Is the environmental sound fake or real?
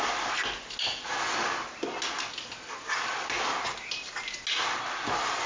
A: real